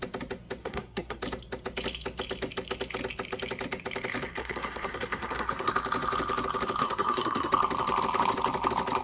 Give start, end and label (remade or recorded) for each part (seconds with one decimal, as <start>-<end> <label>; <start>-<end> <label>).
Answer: 0.0-0.6 recorded; 0.6-1.2 remade; 1.2-4.4 recorded; 4.4-5.7 remade; 5.7-6.8 recorded; 6.8-7.5 remade; 7.5-9.0 recorded